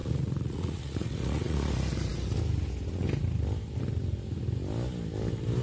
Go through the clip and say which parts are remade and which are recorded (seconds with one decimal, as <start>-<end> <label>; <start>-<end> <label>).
0.0-1.7 remade; 1.7-5.6 recorded